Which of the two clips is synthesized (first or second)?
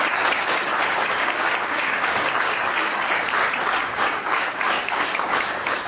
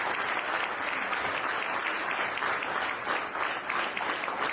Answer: first